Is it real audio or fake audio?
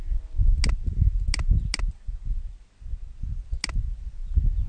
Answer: real